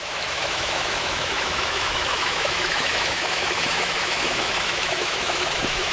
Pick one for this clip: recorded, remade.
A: remade